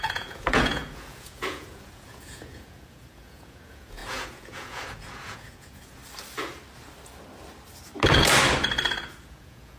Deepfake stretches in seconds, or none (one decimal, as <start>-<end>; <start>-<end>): 0.0-6.0; 9.2-9.8

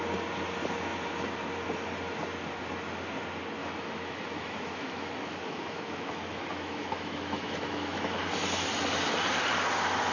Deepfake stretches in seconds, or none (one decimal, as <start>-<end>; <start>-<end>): 3.6-8.2

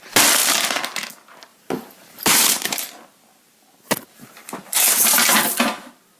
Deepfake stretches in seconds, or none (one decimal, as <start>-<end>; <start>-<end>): 0.4-1.1; 1.5-5.2